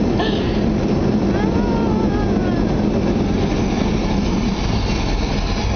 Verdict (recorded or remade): recorded